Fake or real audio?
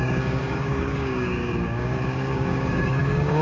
fake